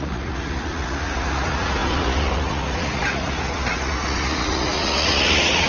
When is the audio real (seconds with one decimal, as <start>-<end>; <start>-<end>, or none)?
none

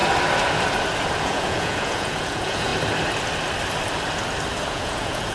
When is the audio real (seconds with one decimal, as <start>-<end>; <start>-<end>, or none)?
0.0-1.2; 2.7-4.7